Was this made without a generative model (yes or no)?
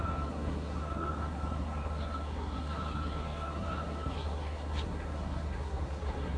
no